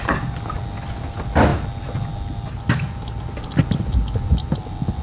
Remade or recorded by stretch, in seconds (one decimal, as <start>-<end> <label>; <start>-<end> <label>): 0.0-5.0 recorded